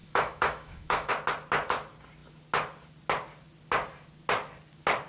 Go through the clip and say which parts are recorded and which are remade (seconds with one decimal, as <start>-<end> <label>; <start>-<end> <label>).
0.0-1.1 remade; 1.1-5.1 recorded